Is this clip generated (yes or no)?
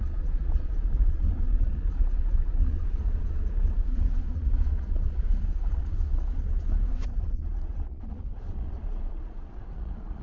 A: yes